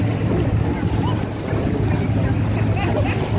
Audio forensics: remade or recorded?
recorded